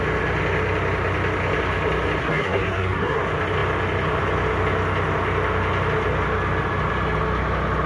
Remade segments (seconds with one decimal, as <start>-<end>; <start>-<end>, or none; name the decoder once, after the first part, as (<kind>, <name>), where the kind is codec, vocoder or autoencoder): 2.2-3.2 (codec, SNAC)